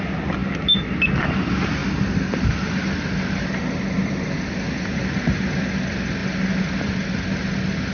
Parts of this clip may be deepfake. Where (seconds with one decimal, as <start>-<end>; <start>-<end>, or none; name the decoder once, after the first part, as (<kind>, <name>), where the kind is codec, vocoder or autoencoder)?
none